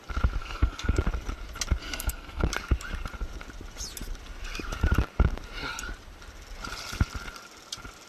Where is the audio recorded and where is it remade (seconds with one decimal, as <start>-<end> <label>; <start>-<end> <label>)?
0.0-0.4 recorded; 0.4-1.0 remade; 1.0-1.8 recorded; 1.8-2.5 remade; 2.5-8.1 recorded